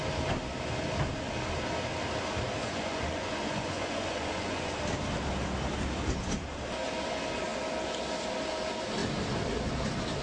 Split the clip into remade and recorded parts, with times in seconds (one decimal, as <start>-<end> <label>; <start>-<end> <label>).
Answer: 0.0-2.6 recorded; 2.6-4.7 remade; 4.7-10.2 recorded